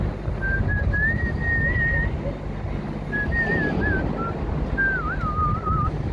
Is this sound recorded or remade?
recorded